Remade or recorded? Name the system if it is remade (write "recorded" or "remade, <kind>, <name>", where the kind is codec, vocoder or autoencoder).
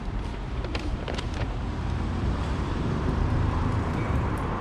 remade, vocoder, BigVGAN v2